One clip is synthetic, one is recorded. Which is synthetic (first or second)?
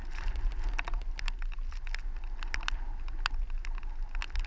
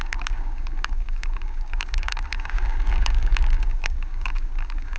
second